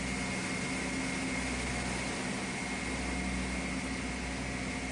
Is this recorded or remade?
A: recorded